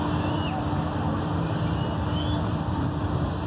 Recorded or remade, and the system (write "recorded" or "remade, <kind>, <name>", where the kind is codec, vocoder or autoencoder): recorded